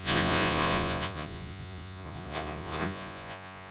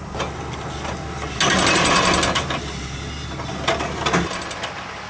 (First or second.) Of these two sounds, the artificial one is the first